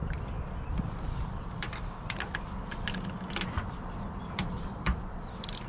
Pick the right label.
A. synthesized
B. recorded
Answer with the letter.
A